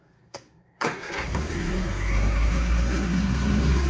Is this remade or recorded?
remade